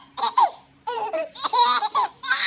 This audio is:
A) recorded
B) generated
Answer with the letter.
B